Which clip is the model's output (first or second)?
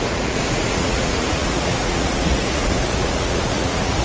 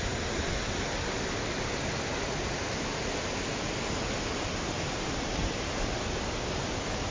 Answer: first